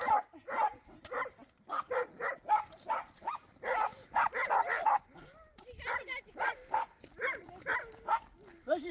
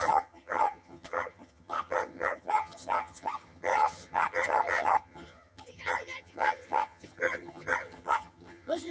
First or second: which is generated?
second